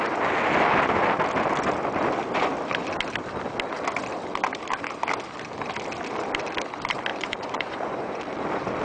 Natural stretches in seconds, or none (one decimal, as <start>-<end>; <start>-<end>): 0.0-7.1; 8.2-8.8